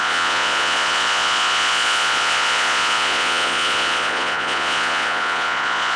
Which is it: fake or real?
fake